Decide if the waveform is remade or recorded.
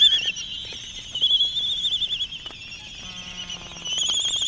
recorded